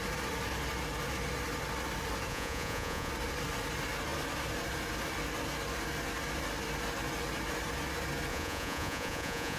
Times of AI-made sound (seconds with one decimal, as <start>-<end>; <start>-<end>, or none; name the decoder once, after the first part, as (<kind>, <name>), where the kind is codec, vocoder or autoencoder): 2.3-3.1 (vocoder, Vocos); 8.3-9.6